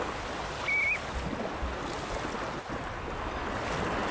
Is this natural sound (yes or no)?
yes